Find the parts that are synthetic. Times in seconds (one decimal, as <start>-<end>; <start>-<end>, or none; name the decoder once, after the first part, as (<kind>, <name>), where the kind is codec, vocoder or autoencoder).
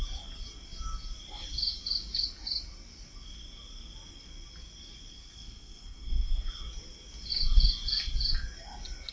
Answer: 5.1-6.5 (codec, SNAC)